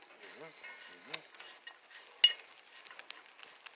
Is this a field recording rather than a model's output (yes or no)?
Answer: yes